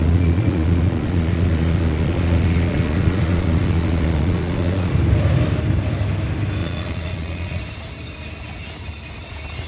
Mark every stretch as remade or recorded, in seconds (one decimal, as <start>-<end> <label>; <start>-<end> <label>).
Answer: 0.0-4.9 remade; 4.9-6.6 recorded; 6.6-7.6 remade; 7.6-9.7 recorded

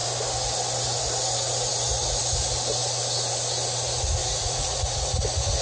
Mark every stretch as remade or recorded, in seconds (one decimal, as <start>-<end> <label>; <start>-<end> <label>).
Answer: 0.0-4.2 recorded; 4.2-5.1 remade; 5.1-5.6 recorded